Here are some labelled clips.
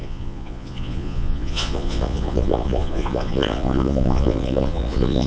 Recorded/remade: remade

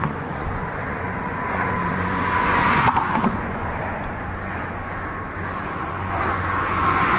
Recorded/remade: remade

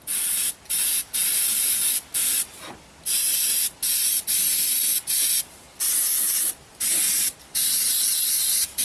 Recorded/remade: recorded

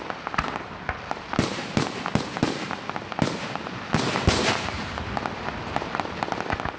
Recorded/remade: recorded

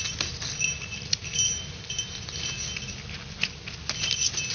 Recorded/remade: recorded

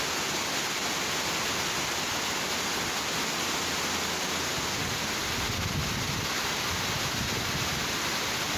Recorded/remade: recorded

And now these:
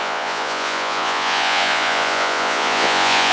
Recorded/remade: remade